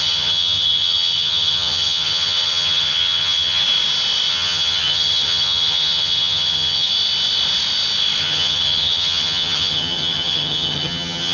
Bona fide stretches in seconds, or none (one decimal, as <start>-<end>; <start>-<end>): 3.6-4.3; 6.9-8.2